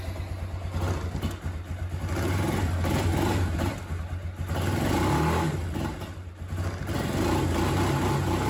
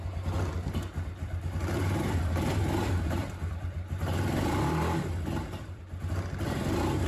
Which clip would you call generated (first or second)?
second